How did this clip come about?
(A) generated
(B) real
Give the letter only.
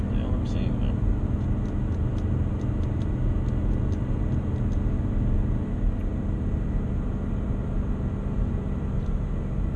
B